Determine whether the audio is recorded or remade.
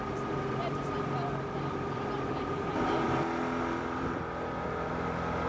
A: remade